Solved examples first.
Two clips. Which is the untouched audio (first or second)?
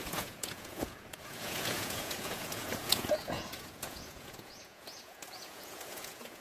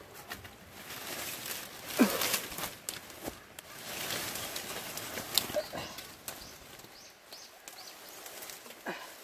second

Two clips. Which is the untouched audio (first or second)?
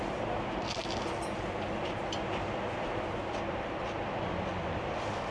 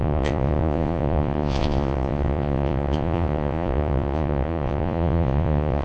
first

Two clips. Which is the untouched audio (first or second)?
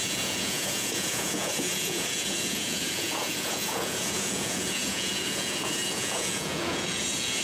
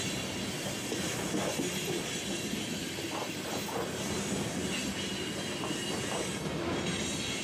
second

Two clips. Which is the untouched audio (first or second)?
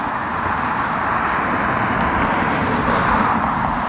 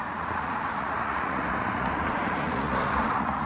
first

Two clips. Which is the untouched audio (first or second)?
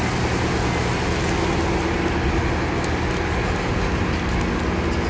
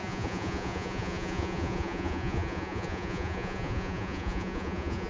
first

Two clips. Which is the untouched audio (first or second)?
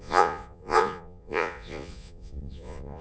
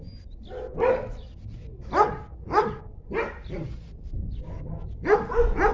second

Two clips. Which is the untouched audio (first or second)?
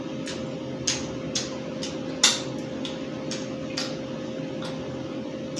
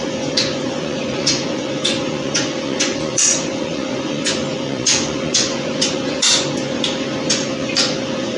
first